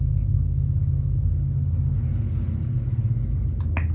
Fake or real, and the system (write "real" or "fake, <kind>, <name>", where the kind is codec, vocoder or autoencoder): real